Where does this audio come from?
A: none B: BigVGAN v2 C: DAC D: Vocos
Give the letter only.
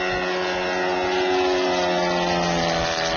A